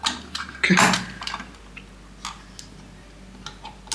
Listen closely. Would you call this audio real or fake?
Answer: real